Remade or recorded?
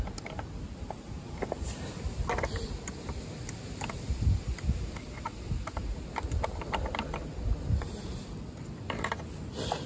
recorded